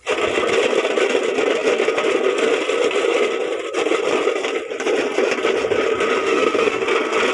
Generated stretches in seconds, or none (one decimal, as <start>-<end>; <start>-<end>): 6.2-6.8